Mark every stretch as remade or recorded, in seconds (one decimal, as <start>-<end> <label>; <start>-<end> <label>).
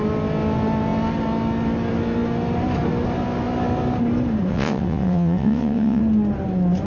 0.0-4.5 recorded; 4.5-6.0 remade; 6.0-6.9 recorded